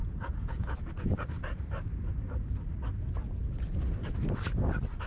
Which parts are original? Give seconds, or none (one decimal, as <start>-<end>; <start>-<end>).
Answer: 1.3-5.1